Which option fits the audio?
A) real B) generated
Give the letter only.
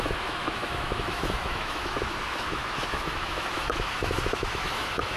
B